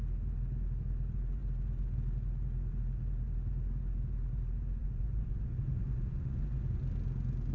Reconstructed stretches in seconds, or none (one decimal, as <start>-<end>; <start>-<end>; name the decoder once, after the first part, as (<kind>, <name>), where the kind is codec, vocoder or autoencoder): 4.8-6.8 (vocoder, Vocos)